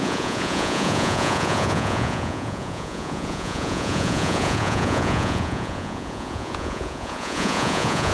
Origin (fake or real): fake